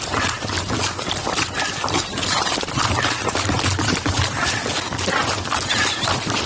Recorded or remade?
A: recorded